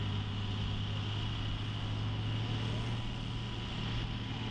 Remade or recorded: recorded